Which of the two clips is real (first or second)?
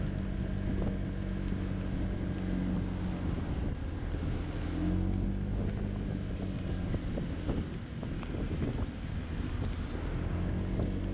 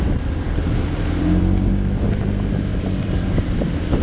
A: first